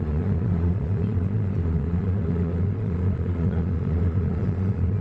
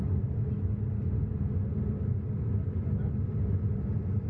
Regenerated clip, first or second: first